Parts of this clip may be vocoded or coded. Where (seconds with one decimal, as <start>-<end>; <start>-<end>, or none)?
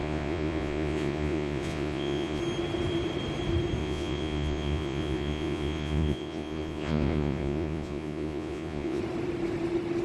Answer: 0.0-2.4; 3.8-9.0